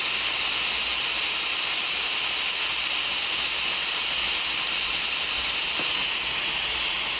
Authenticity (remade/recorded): recorded